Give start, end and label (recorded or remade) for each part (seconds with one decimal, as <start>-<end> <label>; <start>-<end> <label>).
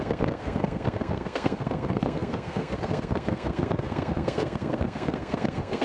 0.0-5.8 remade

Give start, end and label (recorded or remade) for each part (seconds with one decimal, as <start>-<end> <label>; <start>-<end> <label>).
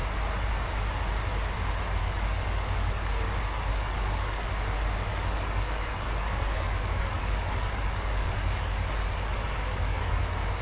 0.0-2.0 recorded; 2.0-4.5 remade; 4.5-5.1 recorded; 5.1-10.2 remade; 10.2-10.6 recorded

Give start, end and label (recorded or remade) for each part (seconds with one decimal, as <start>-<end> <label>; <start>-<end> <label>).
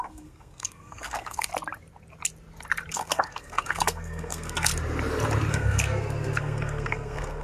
0.0-1.5 remade; 1.5-2.9 recorded; 2.9-4.7 remade; 4.7-5.5 recorded; 5.5-7.4 remade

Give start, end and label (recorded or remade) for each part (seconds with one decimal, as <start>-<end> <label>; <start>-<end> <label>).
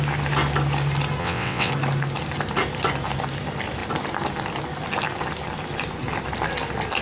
0.0-1.2 recorded; 1.2-1.7 remade; 1.7-7.0 recorded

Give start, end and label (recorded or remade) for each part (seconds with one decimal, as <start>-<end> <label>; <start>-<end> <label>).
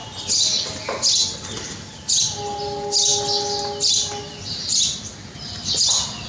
0.0-6.3 recorded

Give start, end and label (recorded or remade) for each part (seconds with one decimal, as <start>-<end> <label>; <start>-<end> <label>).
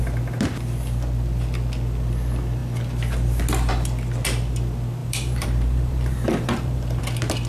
0.0-5.0 recorded; 5.0-7.0 remade; 7.0-7.5 recorded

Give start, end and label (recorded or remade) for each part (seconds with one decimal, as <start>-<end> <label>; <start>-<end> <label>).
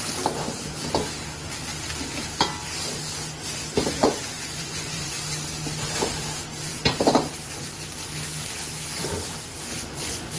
0.0-4.0 recorded; 4.0-5.1 remade; 5.1-9.7 recorded; 9.7-10.4 remade